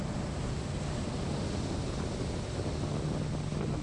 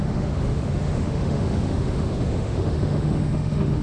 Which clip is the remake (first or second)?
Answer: second